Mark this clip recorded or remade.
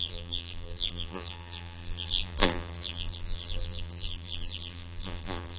remade